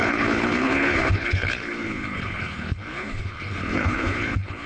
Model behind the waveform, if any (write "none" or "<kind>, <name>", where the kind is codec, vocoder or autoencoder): codec, HILCodec